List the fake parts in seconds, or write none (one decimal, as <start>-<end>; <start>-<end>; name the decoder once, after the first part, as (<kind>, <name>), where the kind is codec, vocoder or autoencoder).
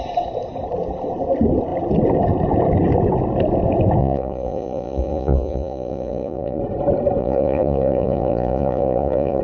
4.0-6.6 (vocoder, Vocos); 7.2-9.4